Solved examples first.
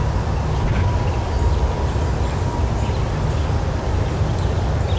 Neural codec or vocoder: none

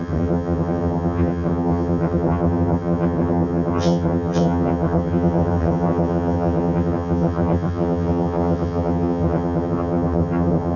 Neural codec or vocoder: vocoder, HiFi-GAN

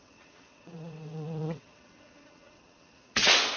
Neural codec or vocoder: vocoder, WaveNeXt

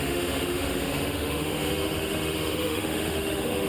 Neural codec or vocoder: autoencoder, DAC-VAE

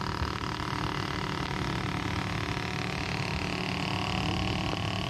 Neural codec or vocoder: none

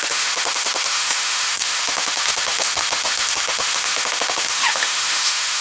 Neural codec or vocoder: autoencoder, DAC-VAE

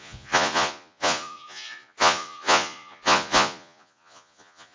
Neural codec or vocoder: vocoder, Vocos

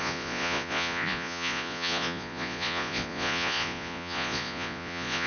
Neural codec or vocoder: vocoder, Vocos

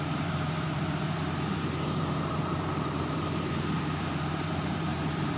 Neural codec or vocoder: vocoder, BigVGAN v2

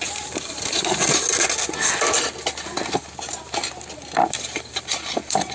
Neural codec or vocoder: none